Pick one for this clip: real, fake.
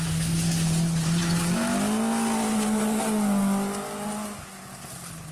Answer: real